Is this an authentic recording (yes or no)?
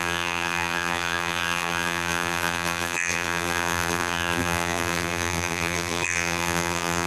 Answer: no